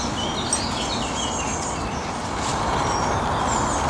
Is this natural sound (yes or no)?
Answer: yes